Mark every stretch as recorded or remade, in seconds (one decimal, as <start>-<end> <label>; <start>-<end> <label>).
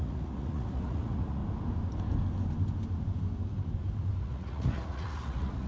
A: 0.0-1.4 remade; 1.4-4.2 recorded; 4.2-5.7 remade